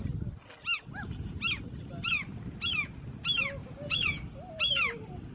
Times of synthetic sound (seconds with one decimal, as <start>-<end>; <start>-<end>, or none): 3.6-4.2